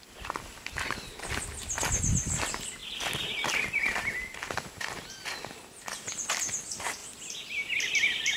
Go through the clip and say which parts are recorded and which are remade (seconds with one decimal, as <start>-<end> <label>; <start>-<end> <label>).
0.0-8.4 recorded